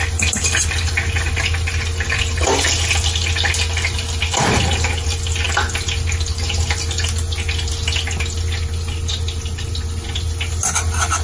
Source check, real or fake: real